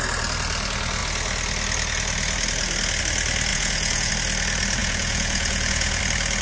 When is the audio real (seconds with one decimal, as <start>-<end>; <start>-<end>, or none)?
0.0-3.5; 4.1-4.8; 6.0-6.4